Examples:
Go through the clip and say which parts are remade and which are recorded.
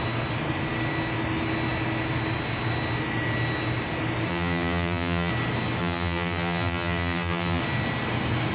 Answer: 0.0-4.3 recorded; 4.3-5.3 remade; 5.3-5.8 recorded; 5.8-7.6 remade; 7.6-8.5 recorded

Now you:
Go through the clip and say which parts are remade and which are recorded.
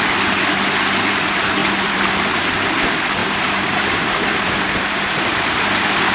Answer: 0.0-1.6 recorded; 1.6-2.1 remade; 2.1-3.2 recorded; 3.2-6.1 remade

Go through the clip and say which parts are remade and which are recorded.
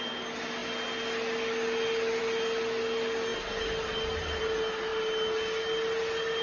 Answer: 0.0-6.4 recorded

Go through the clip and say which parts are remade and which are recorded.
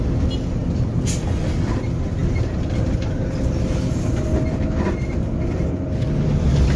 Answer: 0.0-6.8 recorded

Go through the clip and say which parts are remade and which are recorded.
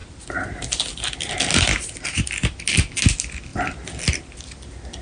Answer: 0.0-5.0 recorded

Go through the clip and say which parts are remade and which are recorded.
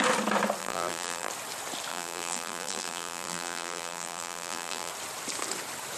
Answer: 0.0-0.6 recorded; 0.6-1.3 remade; 1.3-1.9 recorded; 1.9-4.9 remade; 4.9-6.0 recorded